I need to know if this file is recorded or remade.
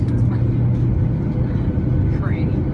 recorded